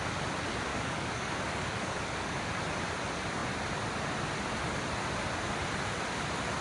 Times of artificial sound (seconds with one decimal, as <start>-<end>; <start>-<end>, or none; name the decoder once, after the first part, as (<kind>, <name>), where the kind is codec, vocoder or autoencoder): 0.7-2.6 (codec, DAC)